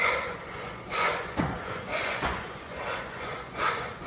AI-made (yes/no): yes